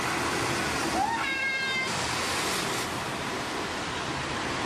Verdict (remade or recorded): remade